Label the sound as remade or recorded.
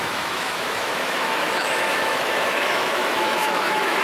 remade